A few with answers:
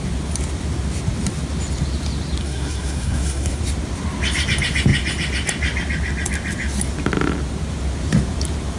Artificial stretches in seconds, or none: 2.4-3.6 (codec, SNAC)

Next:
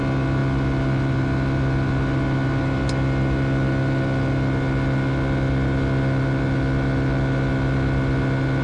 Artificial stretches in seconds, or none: none